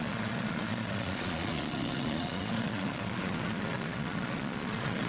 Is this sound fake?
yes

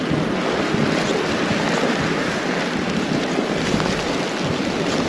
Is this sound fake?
no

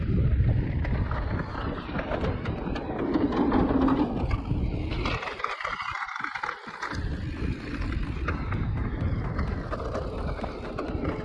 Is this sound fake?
no